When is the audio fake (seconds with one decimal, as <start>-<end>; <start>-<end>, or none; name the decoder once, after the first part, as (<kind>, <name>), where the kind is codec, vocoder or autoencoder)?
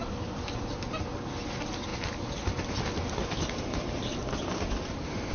0.0-1.0 (vocoder, BigVGAN v2); 1.9-3.4